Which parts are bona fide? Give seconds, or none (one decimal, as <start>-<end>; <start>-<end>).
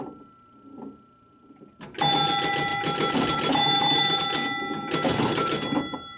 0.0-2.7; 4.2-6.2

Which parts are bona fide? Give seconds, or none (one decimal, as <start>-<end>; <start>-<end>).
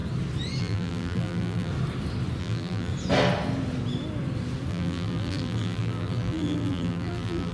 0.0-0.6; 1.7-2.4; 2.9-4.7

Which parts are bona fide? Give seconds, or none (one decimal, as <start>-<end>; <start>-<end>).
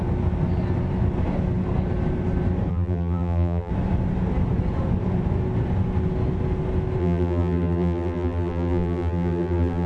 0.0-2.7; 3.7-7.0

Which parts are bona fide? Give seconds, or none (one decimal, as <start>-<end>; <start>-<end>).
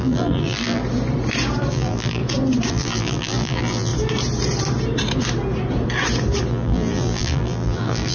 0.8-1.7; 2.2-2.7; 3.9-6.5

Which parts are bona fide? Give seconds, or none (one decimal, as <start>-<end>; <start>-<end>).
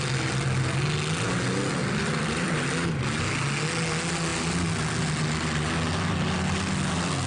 0.0-1.8; 2.7-7.3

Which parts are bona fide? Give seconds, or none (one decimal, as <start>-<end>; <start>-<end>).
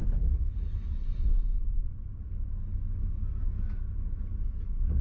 0.0-5.0